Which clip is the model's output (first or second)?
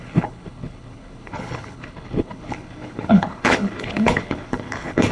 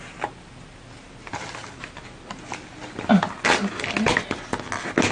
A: first